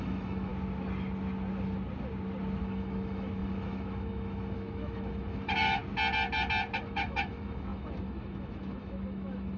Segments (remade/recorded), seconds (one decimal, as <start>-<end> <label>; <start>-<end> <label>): 0.0-0.5 remade; 0.5-2.6 recorded; 2.6-5.8 remade; 5.8-6.8 recorded; 6.8-9.6 remade